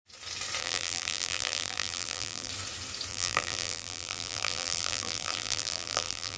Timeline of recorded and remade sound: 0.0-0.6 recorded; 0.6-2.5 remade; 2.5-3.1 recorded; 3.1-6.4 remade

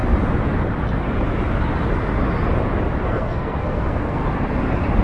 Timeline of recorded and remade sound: 0.0-3.0 recorded; 3.0-4.2 remade; 4.2-5.0 recorded

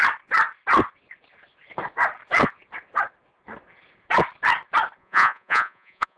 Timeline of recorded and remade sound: 0.0-5.0 recorded; 5.0-6.2 remade

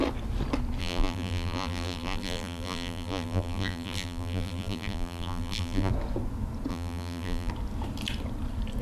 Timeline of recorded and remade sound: 0.0-0.8 recorded; 0.8-5.9 remade; 5.9-6.7 recorded; 6.7-7.5 remade; 7.5-8.8 recorded

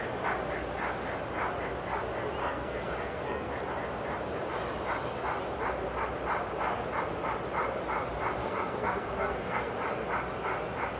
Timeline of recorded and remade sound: 0.0-2.4 recorded; 2.4-3.5 remade; 3.5-8.4 recorded; 8.4-9.7 remade; 9.7-11.0 recorded

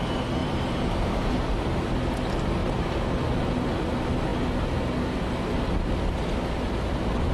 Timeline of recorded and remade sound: 0.0-0.4 recorded; 0.4-1.3 remade; 1.3-2.6 recorded; 2.6-3.2 remade; 3.2-7.3 recorded

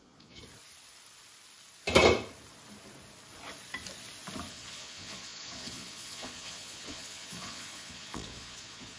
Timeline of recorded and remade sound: 0.0-0.4 remade; 0.4-4.5 recorded; 4.5-9.0 remade